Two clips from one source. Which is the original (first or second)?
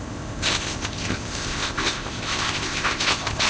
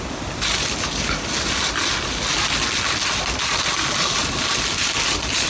second